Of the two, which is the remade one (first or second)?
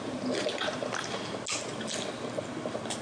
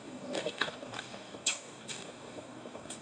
second